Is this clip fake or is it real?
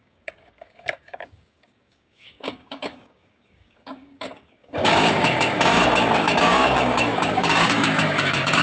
fake